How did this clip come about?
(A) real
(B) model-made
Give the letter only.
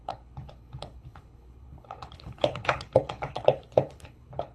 B